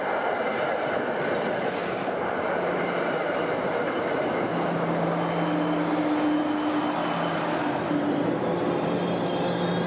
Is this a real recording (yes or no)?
yes